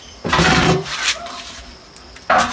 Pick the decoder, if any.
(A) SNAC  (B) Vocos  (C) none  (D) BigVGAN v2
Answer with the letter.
D